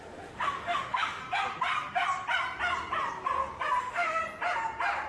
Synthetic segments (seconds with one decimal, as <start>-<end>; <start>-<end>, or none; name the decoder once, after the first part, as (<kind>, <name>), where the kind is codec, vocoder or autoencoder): 0.0-1.2 (autoencoder, DAC-VAE); 3.8-4.2

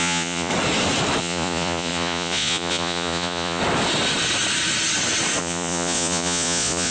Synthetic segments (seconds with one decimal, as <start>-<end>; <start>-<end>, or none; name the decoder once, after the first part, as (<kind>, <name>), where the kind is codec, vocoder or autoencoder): 0.0-0.5 (vocoder, Vocos); 1.2-3.6; 5.4-6.9

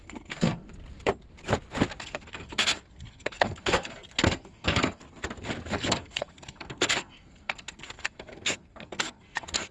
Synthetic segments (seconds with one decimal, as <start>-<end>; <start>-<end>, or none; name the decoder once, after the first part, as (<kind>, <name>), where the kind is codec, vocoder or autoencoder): 0.0-0.7 (codec, SNAC); 2.0-5.0; 5.7-9.7